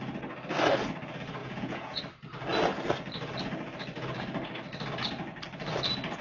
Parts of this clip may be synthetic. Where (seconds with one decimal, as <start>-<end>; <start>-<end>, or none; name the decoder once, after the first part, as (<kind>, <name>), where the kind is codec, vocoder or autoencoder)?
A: 1.4-2.0 (vocoder, Vocos)